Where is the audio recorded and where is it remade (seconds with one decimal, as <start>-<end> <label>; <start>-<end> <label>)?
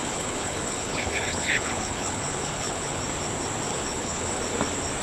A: 0.0-3.0 remade; 3.0-3.7 recorded; 3.7-4.4 remade; 4.4-5.0 recorded